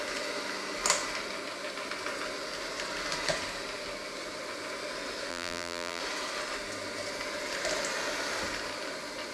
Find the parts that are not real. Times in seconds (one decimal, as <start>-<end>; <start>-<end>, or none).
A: 5.3-6.0